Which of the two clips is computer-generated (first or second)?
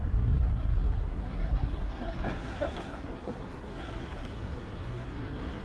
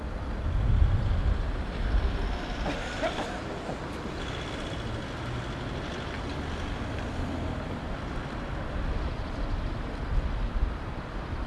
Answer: first